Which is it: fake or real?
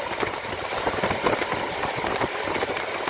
real